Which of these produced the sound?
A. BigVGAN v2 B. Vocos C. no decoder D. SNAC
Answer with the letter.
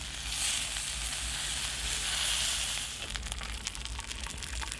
C